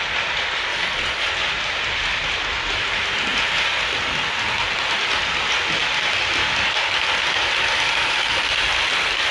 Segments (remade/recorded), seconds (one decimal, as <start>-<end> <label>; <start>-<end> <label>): 0.0-0.7 recorded; 0.7-1.3 remade; 1.3-9.3 recorded